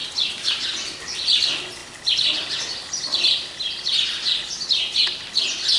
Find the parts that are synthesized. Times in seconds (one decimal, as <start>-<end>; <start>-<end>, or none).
none

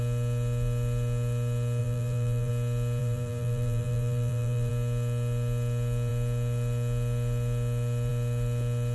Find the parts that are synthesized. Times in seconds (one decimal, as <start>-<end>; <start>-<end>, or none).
1.8-2.5; 3.0-4.7

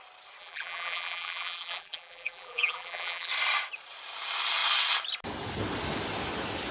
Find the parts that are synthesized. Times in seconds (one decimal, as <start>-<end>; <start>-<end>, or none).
0.4-3.3

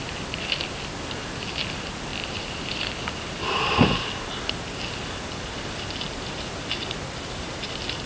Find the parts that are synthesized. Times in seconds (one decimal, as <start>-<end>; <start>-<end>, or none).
none

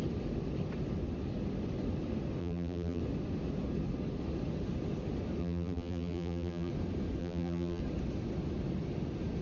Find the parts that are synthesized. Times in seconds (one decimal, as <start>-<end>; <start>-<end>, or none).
2.4-3.0; 5.4-6.7; 7.2-7.8